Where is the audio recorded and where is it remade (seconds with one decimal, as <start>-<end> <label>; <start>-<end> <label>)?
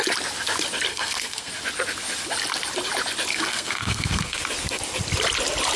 0.0-0.9 recorded; 0.9-1.5 remade; 1.5-3.3 recorded; 3.3-4.4 remade; 4.4-5.8 recorded